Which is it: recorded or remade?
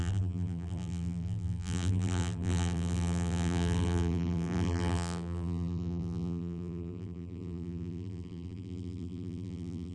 remade